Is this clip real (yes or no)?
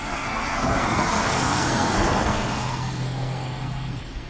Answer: no